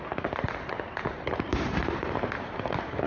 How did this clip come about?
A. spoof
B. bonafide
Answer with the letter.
A